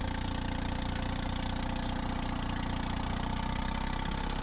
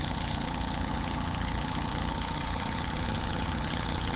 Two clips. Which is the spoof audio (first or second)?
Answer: second